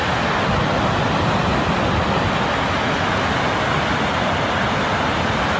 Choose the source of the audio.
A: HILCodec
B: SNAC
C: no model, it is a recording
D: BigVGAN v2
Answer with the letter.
C